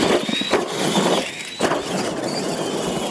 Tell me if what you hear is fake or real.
real